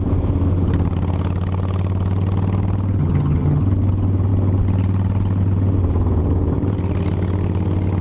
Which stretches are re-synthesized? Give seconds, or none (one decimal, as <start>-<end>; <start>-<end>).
3.0-3.6